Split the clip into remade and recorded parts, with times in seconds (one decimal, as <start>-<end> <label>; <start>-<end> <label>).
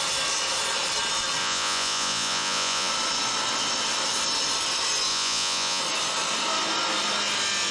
0.0-1.4 recorded; 1.4-2.9 remade; 2.9-5.1 recorded; 5.1-5.8 remade; 5.8-7.7 recorded